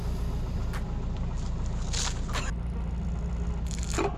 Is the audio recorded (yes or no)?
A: yes